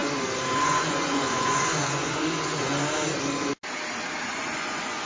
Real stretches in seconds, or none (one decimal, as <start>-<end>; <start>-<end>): 0.0-0.6; 2.7-4.3